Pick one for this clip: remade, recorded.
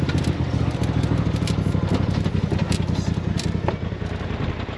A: recorded